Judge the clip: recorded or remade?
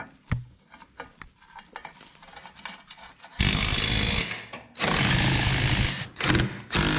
recorded